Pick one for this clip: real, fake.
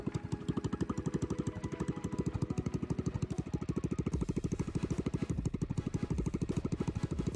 real